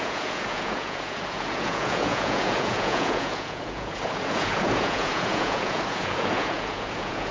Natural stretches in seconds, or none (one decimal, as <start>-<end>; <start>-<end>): none